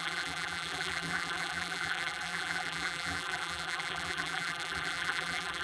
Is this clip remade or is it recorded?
remade